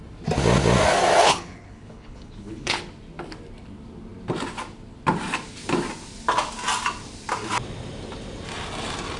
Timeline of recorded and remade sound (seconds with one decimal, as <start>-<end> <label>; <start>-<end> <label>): 0.0-1.2 recorded; 1.2-2.8 remade; 2.8-9.2 recorded